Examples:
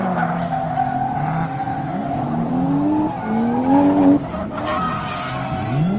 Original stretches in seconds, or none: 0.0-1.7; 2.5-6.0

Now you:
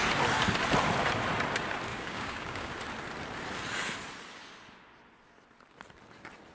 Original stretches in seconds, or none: 0.0-1.9; 2.7-6.5